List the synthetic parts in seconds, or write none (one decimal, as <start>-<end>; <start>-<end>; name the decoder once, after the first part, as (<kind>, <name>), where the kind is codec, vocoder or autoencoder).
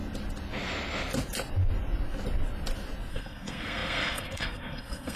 3.1-5.2 (codec, SNAC)